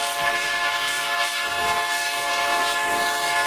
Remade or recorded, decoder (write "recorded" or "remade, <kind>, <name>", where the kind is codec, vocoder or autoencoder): remade, codec, SNAC